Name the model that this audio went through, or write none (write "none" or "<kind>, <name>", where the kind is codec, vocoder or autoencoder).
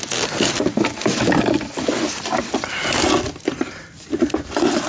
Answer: none